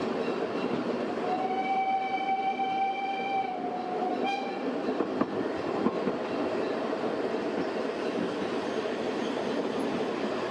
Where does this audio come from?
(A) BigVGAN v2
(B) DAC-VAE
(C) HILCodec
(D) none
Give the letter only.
D